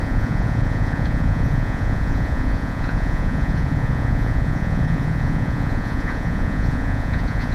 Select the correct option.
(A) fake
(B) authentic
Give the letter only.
A